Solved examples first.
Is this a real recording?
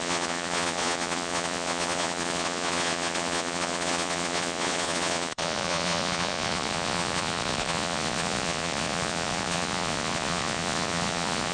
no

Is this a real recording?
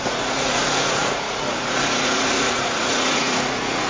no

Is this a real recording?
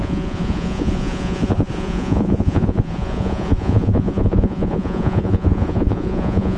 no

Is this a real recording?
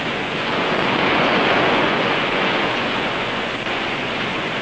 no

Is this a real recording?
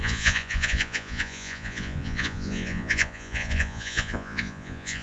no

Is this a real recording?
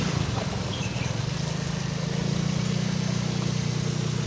yes